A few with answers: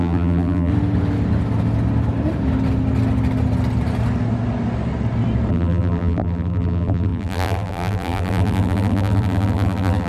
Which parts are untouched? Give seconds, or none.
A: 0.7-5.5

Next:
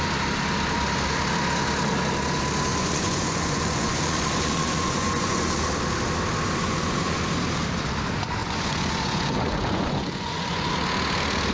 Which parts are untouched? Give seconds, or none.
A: 0.0-2.7; 5.6-6.6; 7.2-8.4; 10.7-11.5

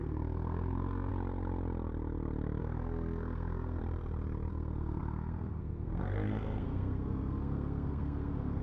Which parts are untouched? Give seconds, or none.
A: 1.1-2.6; 3.8-4.5

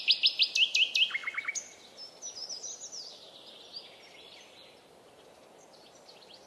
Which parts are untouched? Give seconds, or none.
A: 0.0-6.5

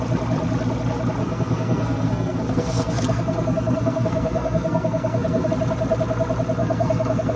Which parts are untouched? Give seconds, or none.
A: 0.0-1.2; 5.5-6.6

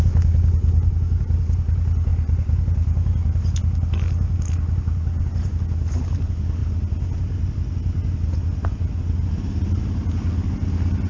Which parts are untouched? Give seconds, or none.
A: 0.0-11.1